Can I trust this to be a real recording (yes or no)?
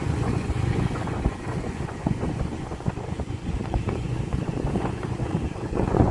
no